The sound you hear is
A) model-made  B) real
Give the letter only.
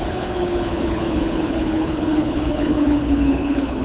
A